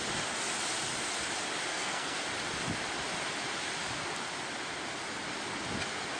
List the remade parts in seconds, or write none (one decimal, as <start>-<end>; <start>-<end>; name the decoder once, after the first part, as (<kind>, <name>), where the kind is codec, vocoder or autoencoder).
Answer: 1.7-2.2 (codec, SNAC)